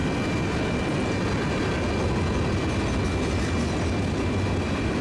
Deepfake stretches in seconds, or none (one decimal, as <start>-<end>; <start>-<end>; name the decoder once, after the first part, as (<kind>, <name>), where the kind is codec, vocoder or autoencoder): none